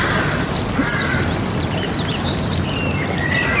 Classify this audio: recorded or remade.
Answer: recorded